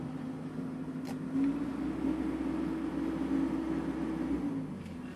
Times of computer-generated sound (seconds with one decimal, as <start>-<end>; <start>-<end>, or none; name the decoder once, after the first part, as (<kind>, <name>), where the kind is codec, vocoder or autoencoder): none